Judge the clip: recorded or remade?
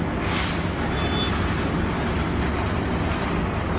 recorded